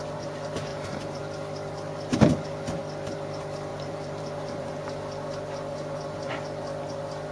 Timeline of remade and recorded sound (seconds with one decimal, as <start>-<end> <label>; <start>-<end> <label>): 0.0-0.7 recorded; 0.7-1.2 remade; 1.2-3.7 recorded; 3.7-4.7 remade; 4.7-7.3 recorded